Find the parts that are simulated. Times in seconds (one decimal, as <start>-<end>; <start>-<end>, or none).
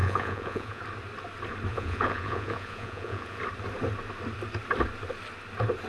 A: 0.0-0.8; 1.7-3.4